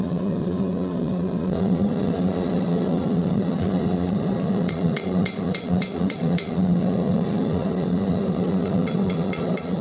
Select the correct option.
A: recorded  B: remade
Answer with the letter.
B